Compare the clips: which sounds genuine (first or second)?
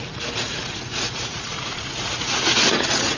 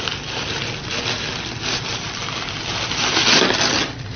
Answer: second